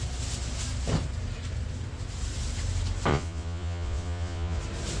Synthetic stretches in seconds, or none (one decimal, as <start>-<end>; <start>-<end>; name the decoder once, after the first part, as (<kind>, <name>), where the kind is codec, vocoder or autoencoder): 3.1-4.6 (vocoder, Vocos)